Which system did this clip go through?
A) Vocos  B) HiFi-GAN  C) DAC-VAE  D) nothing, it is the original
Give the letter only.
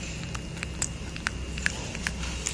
D